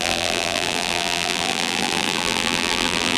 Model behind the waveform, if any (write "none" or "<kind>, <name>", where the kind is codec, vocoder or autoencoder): vocoder, BigVGAN v2